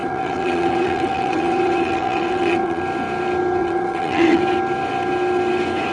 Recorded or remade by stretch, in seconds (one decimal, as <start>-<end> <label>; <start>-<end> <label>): 0.0-2.8 remade; 2.8-3.6 recorded; 3.6-4.4 remade; 4.4-5.9 recorded

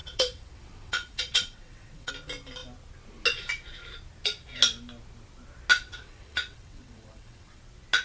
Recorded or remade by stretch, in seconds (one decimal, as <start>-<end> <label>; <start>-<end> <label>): 0.0-2.1 remade; 2.1-5.7 recorded; 5.7-7.6 remade; 7.6-8.0 recorded

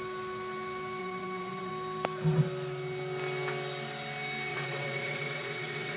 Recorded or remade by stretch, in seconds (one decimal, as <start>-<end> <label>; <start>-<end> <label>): 0.0-1.0 recorded; 1.0-1.7 remade; 1.7-4.5 recorded; 4.5-6.0 remade

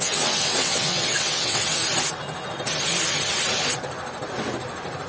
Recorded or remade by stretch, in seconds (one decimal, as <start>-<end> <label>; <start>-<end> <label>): 0.0-1.8 remade; 1.8-5.1 recorded